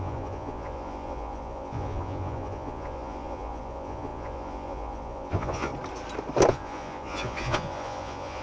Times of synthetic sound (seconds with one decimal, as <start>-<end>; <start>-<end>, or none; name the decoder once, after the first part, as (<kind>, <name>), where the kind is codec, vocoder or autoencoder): 0.0-5.7 (vocoder, Vocos); 6.5-8.4